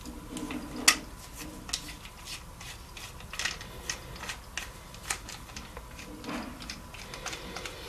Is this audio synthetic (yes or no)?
no